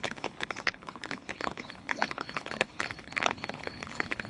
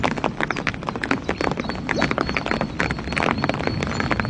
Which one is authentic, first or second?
second